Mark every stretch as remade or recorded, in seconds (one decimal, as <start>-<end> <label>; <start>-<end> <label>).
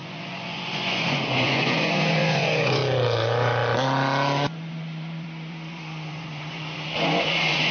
0.0-2.8 remade; 2.8-4.7 recorded; 4.7-7.7 remade